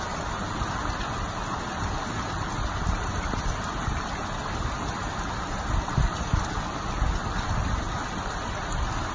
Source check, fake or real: real